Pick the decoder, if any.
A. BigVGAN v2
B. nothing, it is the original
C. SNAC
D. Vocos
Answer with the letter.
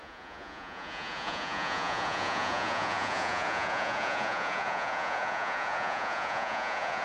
D